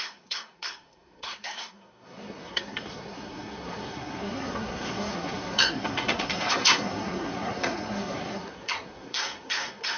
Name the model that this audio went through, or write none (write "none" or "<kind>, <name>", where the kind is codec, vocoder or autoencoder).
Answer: codec, SNAC